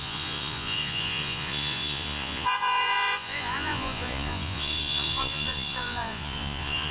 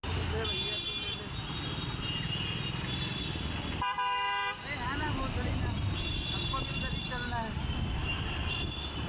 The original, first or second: second